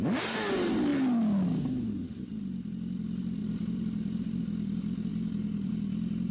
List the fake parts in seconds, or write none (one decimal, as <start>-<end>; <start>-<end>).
3.4-4.4; 5.1-5.7